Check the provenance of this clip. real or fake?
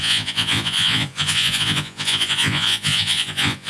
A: fake